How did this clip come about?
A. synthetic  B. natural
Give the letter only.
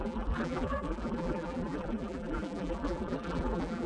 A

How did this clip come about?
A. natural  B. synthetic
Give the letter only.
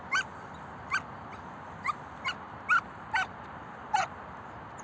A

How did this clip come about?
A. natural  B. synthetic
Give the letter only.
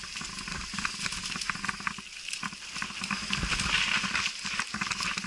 A